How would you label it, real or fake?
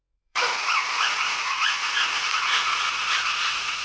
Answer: fake